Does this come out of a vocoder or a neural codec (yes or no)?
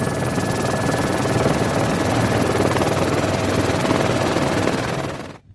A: no